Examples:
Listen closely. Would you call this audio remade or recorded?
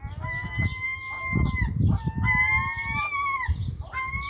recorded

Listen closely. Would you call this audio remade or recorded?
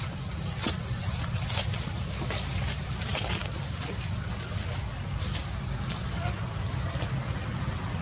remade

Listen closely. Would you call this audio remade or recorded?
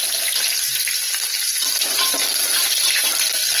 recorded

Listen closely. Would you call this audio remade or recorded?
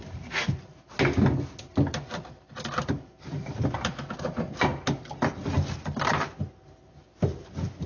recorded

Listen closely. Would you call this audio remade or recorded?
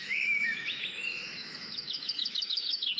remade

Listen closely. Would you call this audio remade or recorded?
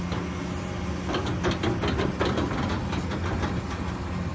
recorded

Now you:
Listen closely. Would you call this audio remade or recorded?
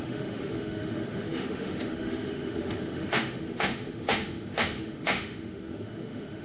remade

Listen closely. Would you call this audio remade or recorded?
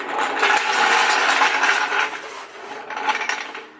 recorded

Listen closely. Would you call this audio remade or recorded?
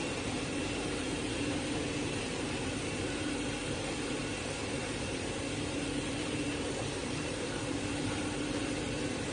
remade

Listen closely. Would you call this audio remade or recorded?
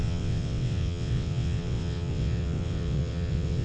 remade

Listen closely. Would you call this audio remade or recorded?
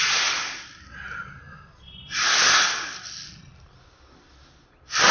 recorded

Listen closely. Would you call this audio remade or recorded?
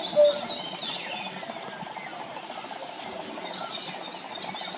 recorded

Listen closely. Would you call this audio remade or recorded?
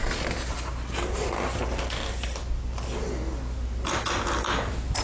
recorded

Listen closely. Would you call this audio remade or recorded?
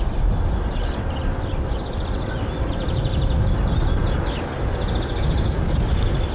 recorded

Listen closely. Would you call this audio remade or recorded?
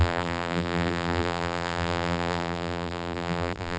remade